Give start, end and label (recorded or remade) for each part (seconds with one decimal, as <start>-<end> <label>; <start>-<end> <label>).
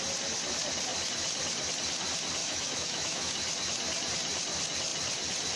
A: 0.0-2.4 recorded; 2.4-3.3 remade; 3.3-5.6 recorded